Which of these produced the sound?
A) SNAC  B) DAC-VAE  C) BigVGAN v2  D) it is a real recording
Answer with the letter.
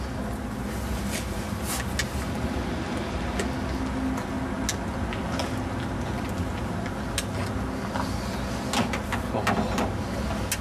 D